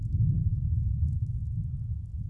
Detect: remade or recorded recorded